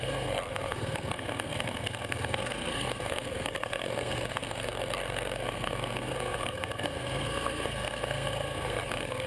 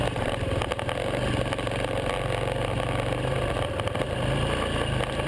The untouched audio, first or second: second